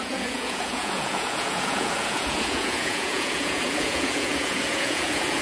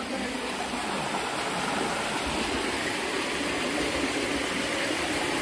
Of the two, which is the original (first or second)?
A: second